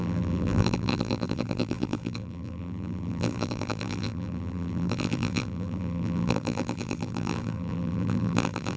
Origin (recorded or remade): remade